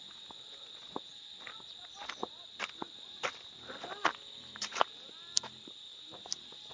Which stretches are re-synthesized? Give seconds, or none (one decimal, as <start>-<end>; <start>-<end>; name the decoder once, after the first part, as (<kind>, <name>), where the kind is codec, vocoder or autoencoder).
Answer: none